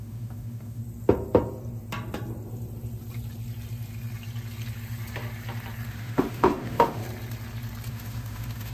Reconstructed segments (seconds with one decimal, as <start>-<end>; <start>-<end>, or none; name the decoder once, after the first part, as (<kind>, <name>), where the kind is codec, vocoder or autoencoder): 0.0-0.8 (autoencoder, DAC-VAE); 5.9-7.0; 7.9-8.7